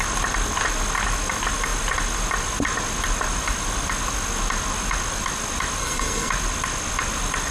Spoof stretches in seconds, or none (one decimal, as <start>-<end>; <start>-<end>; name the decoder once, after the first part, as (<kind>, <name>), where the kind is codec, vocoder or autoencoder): 5.8-6.3 (codec, SNAC)